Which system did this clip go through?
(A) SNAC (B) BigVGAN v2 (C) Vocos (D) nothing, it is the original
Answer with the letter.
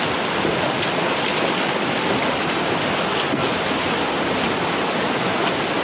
D